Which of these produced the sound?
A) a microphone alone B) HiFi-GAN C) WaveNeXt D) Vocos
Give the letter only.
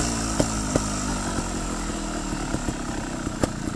A